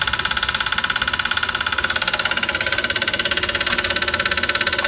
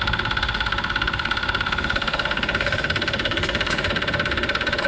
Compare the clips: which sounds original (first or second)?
first